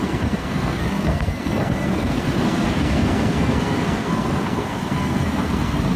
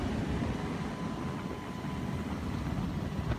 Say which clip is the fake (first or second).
first